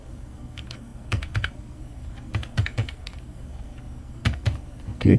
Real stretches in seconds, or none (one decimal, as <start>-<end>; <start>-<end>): none